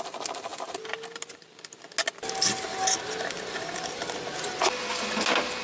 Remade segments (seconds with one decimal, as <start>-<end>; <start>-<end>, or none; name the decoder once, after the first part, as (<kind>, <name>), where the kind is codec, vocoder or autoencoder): none